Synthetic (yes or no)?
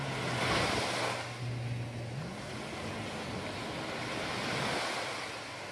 no